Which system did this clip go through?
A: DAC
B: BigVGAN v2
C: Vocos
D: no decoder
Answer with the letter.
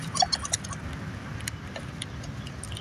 D